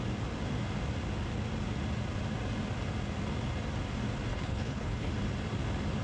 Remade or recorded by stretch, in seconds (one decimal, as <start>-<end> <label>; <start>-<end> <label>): 0.0-4.3 recorded; 4.3-5.1 remade; 5.1-6.0 recorded